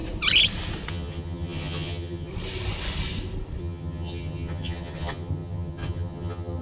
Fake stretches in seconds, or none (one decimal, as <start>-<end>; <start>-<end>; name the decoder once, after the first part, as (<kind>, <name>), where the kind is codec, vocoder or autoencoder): 0.9-2.3 (vocoder, HiFi-GAN); 3.6-6.6